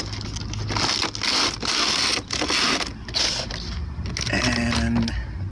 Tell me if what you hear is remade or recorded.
recorded